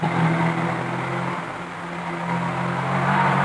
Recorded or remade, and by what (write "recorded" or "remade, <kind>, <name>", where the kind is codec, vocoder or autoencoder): recorded